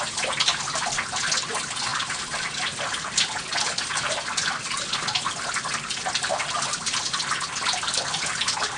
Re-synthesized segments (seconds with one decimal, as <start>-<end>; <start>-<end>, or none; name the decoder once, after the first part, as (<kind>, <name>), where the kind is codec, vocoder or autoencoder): none